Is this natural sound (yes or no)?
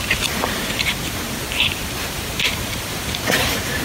no